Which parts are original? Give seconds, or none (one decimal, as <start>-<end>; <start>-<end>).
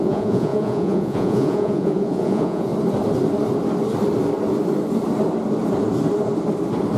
2.7-7.0